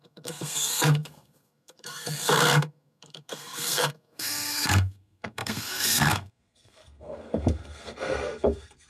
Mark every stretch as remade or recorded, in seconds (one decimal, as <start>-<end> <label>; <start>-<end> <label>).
0.0-8.9 remade